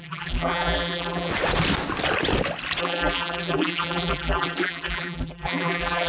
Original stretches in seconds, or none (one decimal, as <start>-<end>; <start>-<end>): 1.3-2.8